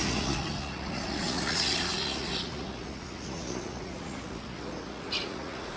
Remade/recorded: remade